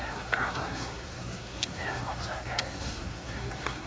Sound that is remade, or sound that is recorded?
remade